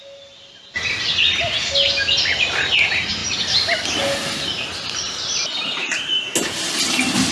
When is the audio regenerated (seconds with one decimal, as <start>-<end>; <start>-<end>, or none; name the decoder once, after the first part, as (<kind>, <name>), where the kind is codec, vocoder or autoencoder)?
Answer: none